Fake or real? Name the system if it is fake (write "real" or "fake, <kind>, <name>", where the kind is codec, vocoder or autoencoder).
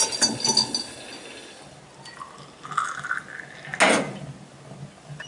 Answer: real